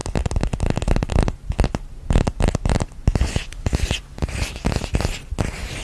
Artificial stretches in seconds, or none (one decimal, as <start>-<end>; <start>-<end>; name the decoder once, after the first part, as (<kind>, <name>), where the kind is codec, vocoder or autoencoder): none